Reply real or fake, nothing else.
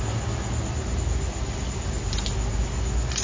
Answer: real